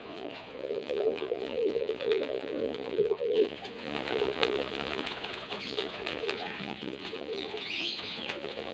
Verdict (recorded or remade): remade